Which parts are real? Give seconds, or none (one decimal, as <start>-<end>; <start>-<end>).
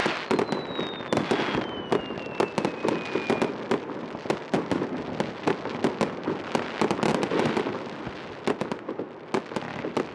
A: 0.0-10.1